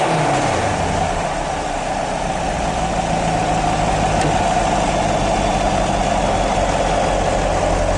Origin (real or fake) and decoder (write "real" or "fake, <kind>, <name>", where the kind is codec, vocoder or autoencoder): real